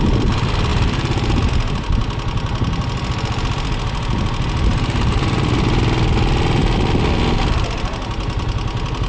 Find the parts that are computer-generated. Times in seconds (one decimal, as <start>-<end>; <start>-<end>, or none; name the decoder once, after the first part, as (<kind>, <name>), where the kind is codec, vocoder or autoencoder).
0.7-1.5 (vocoder, BigVGAN v2); 4.7-5.8